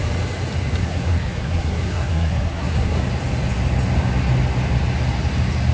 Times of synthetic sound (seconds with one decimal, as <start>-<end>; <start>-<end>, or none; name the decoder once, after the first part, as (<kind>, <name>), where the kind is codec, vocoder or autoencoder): 0.8-3.0 (codec, SNAC)